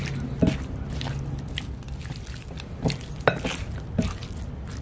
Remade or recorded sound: recorded